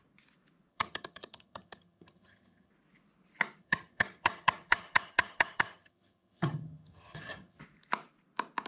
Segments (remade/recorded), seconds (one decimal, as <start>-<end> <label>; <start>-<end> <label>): 0.0-0.7 recorded; 0.7-2.7 remade; 2.7-3.6 recorded; 3.6-7.6 remade; 7.6-8.7 recorded